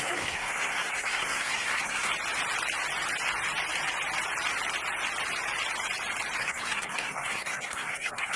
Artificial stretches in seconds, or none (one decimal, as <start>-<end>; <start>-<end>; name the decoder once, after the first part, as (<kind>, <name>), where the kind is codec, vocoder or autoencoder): 0.0-2.1 (codec, SNAC); 6.4-8.4